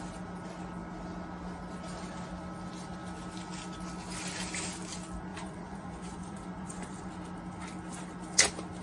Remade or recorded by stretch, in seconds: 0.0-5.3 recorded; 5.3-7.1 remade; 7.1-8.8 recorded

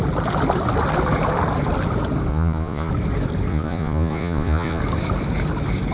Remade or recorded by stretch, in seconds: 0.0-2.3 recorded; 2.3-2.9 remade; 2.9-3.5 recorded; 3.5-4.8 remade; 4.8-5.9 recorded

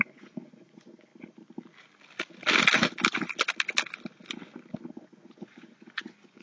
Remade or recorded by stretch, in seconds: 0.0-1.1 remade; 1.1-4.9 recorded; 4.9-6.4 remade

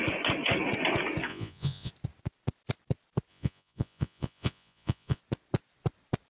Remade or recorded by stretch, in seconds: 0.0-1.3 recorded; 1.3-1.9 remade; 1.9-3.3 recorded; 3.3-5.2 remade; 5.2-6.3 recorded